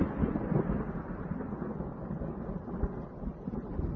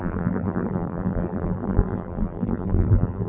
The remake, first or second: second